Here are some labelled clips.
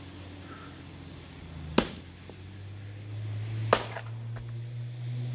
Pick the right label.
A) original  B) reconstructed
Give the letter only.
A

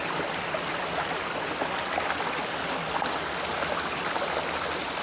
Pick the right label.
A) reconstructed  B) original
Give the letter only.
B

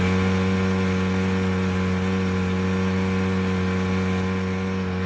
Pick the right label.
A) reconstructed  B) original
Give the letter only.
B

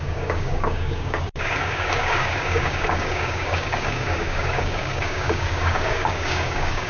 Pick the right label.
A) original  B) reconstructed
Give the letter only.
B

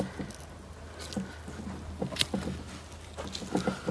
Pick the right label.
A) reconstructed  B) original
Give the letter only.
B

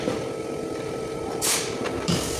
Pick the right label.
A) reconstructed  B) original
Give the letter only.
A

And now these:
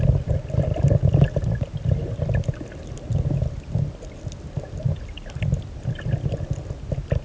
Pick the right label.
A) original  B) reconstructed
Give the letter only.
A